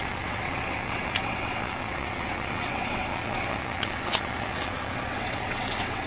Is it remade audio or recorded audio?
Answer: remade